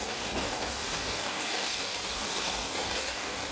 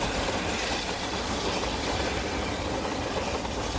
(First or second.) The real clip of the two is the second